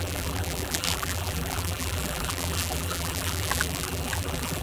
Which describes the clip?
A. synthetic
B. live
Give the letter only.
A